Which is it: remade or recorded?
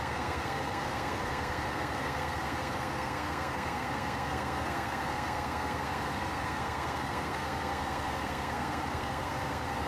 remade